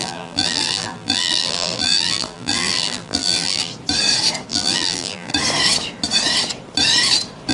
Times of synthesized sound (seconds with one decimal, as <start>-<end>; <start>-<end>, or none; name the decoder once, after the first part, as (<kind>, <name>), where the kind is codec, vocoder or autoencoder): 0.0-3.7 (vocoder, BigVGAN v2); 4.5-5.3